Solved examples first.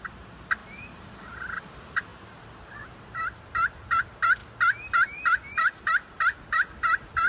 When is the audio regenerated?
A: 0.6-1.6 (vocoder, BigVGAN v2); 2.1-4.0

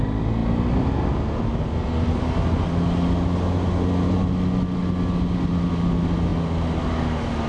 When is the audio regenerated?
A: none

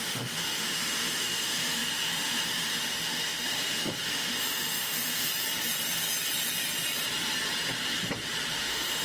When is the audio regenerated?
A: 0.0-5.3 (autoencoder, DAC-VAE); 8.5-9.0

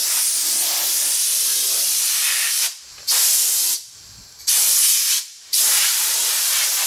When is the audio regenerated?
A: 1.5-2.8 (vocoder, BigVGAN v2); 5.3-6.2